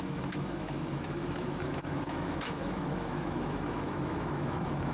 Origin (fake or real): fake